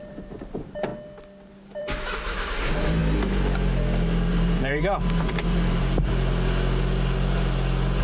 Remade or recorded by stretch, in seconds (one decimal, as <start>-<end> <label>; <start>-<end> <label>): 0.0-0.9 remade; 0.9-1.5 recorded; 1.5-3.0 remade; 3.0-4.3 recorded; 4.3-6.1 remade; 6.1-8.0 recorded